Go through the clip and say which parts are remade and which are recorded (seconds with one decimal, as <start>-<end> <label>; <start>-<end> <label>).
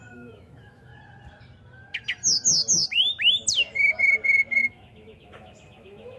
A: 0.0-0.9 remade; 0.9-4.6 recorded; 4.6-6.2 remade